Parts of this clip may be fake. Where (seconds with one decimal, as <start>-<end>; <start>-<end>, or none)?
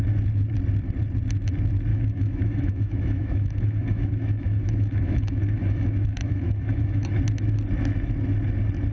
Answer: 1.9-7.1